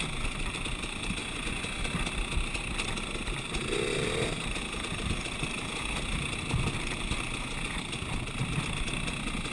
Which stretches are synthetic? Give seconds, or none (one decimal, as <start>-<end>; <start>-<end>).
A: 1.2-1.8